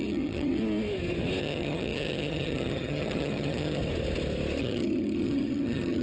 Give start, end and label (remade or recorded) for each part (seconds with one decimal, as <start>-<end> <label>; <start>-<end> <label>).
0.0-0.6 remade; 0.6-1.4 recorded; 1.4-3.8 remade; 3.8-4.6 recorded; 4.6-6.0 remade